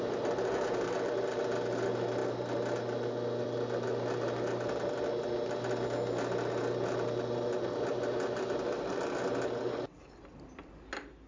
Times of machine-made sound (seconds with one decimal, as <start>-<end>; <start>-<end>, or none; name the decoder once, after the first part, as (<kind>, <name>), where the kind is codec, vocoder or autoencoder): none